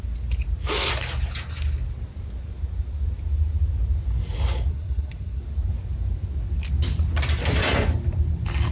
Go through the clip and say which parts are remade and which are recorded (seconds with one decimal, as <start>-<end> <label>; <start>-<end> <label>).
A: 0.0-4.7 recorded; 4.7-5.4 remade; 5.4-8.7 recorded